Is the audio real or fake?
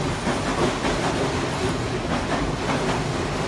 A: real